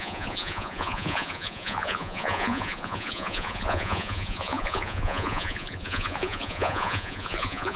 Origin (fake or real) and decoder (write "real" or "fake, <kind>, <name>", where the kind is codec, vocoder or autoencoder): fake, vocoder, Vocos